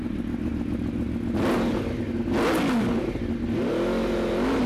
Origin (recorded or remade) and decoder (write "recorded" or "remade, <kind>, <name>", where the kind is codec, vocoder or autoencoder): recorded